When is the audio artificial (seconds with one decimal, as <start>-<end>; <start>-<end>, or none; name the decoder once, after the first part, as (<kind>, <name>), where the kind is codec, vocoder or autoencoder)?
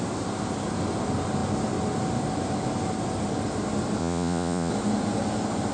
4.0-4.7 (vocoder, Vocos)